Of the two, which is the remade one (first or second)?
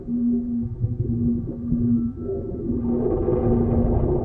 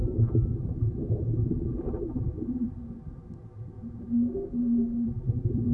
second